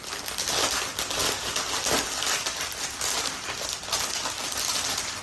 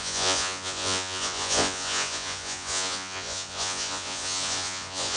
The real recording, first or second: first